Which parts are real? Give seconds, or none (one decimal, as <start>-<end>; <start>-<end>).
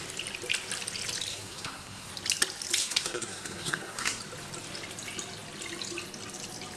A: 0.0-1.3; 2.1-2.8; 4.2-6.8